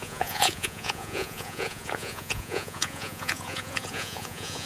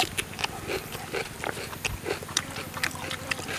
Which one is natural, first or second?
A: second